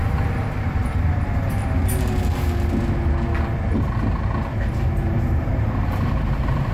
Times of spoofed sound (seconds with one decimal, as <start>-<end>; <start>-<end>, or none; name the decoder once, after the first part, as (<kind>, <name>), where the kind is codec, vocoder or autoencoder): 0.0-1.6 (vocoder, BigVGAN v2); 4.7-6.7